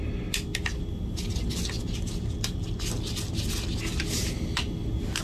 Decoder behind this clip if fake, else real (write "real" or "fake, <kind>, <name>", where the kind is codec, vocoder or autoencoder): real